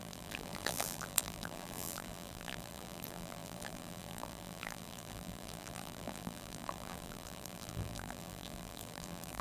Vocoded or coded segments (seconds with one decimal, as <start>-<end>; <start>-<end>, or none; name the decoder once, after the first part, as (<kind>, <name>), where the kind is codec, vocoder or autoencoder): 0.0-9.4 (vocoder, BigVGAN v2)